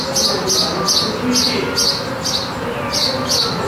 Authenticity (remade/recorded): recorded